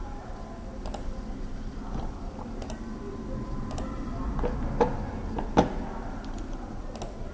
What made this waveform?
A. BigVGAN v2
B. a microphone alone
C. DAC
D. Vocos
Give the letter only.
B